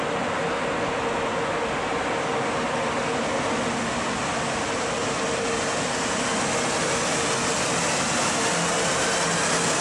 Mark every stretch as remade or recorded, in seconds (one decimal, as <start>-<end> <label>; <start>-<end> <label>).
0.0-5.0 recorded; 5.0-6.3 remade; 6.3-9.8 recorded